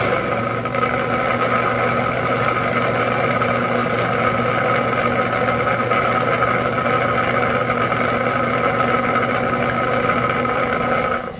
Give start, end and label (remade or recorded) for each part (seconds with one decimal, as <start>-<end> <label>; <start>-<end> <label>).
0.0-11.4 recorded